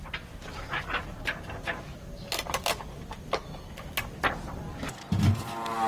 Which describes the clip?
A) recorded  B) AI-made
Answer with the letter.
A